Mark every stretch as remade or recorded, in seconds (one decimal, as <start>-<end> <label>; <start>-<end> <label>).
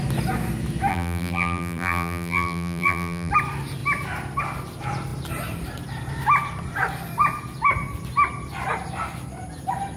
0.0-0.9 recorded; 0.9-3.3 remade; 3.3-10.0 recorded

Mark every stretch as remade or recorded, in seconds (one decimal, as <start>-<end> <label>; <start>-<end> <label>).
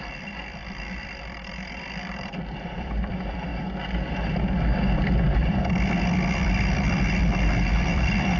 0.0-3.5 remade; 3.5-4.1 recorded; 4.1-8.4 remade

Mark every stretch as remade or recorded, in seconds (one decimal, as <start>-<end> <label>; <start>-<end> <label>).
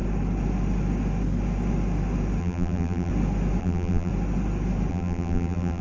0.0-2.4 recorded; 2.4-3.1 remade; 3.1-3.6 recorded; 3.6-4.1 remade; 4.1-4.9 recorded; 4.9-5.8 remade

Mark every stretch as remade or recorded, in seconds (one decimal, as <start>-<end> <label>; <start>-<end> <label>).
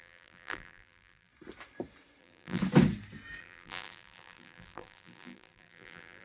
0.0-1.3 remade; 1.3-2.2 recorded; 2.2-2.6 remade; 2.6-3.4 recorded; 3.4-6.2 remade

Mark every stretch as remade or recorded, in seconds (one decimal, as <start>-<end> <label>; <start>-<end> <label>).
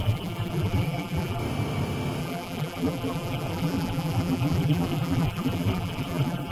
0.0-1.4 remade; 1.4-2.2 recorded; 2.2-6.5 remade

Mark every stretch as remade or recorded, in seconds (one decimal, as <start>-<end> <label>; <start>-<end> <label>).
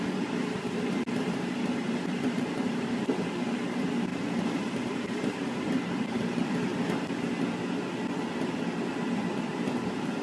0.0-6.7 remade; 6.7-9.5 recorded; 9.5-10.2 remade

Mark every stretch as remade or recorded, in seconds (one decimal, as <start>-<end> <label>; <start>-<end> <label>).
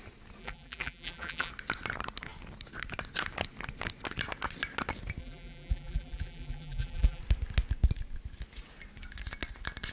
0.0-0.4 recorded; 0.4-1.5 remade; 1.5-5.2 recorded; 5.2-7.2 remade; 7.2-9.9 recorded